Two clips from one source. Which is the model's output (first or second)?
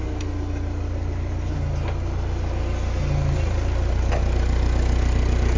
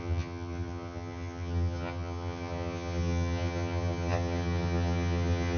second